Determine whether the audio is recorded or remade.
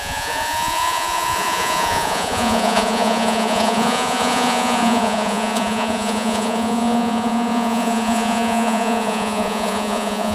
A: remade